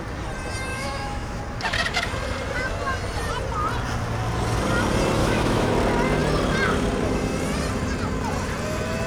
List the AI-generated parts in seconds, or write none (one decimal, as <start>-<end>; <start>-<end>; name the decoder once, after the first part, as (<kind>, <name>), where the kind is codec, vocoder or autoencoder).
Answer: 0.7-1.4 (autoencoder, DAC-VAE); 5.2-5.7